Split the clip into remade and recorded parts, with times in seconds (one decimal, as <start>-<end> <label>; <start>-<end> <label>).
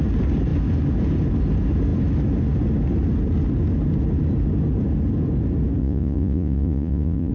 0.0-5.8 recorded; 5.8-7.3 remade